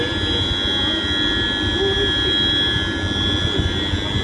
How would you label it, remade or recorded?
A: recorded